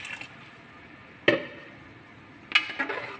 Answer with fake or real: real